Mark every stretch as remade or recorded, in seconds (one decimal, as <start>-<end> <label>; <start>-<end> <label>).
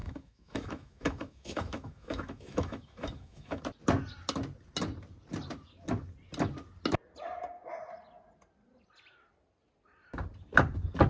0.0-3.6 remade; 3.6-11.1 recorded